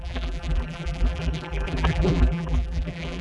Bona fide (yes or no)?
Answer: no